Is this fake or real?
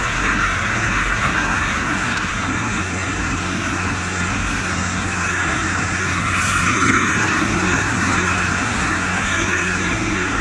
fake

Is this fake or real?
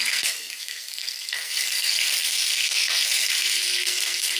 fake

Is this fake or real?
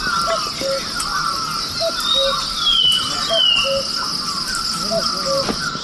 real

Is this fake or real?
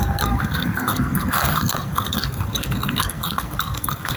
fake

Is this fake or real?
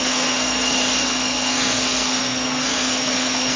fake